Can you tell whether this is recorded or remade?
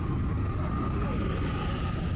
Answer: recorded